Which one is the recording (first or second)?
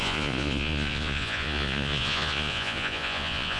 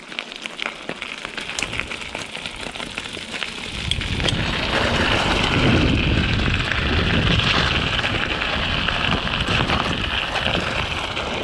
second